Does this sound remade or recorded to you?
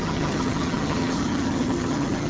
remade